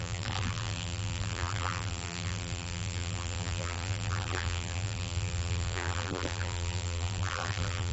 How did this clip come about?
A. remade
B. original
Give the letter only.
A